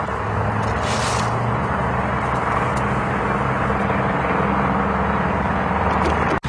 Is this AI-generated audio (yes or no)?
no